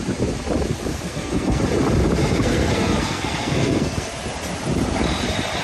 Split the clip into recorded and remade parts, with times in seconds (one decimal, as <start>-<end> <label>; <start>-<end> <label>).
0.0-0.9 recorded; 0.9-1.6 remade; 1.6-2.2 recorded; 2.2-4.1 remade; 4.1-5.6 recorded